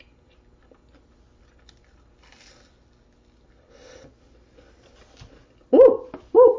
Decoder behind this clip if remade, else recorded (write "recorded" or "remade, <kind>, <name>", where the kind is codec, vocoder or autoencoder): recorded